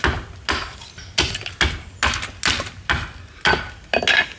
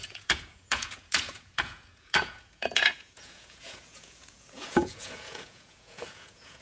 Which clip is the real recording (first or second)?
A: first